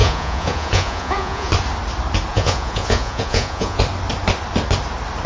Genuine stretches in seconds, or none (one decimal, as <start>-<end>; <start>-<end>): 1.5-2.3; 3.8-5.3